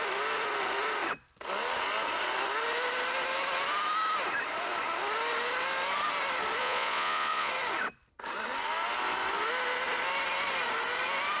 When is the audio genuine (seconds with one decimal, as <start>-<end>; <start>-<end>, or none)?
0.0-6.6; 7.5-11.4